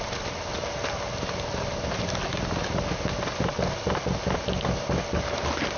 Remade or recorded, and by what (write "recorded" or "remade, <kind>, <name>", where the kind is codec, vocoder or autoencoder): recorded